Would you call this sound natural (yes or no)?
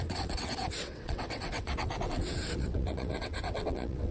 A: no